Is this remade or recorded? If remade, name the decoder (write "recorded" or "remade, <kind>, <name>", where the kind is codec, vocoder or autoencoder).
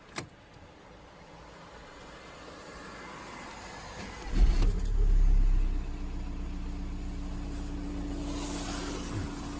recorded